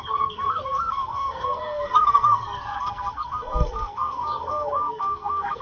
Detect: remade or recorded remade